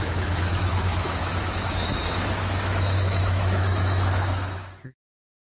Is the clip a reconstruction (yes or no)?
yes